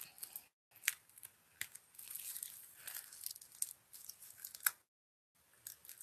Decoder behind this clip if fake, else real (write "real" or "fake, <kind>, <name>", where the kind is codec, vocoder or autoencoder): real